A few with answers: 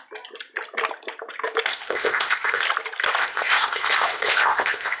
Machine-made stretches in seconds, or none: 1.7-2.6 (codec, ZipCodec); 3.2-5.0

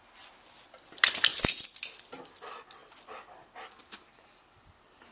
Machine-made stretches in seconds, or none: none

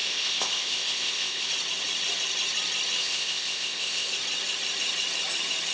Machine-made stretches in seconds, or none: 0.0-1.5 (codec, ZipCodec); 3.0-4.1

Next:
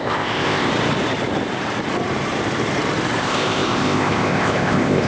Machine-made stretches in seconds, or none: 0.0-0.7 (codec, ZipCodec); 3.2-5.1

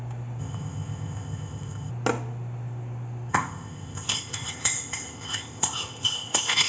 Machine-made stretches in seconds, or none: 0.4-1.9 (codec, ZipCodec); 3.3-6.7

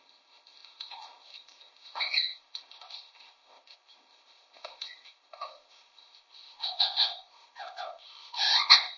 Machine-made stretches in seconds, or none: 0.0-9.0 (codec, ZipCodec)